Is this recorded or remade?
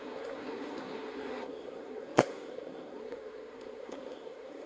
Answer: remade